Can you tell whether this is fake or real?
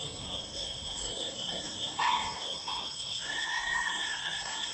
fake